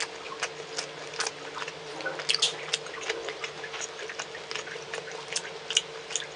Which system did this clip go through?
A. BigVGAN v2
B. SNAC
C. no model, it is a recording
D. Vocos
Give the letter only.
C